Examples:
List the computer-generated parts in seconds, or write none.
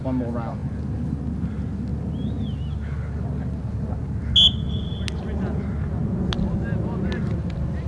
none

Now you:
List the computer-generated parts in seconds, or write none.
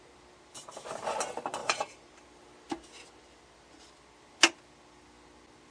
1.6-2.2 (vocoder, BigVGAN v2)